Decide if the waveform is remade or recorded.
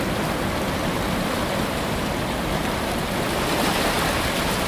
recorded